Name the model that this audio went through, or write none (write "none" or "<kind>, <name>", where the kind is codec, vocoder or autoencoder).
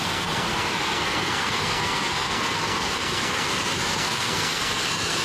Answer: codec, SNAC